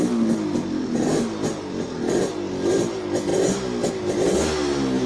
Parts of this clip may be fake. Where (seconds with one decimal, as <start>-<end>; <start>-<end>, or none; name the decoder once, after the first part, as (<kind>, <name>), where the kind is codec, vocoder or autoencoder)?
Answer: none